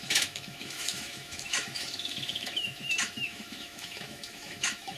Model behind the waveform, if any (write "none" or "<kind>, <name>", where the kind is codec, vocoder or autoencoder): autoencoder, DAC-VAE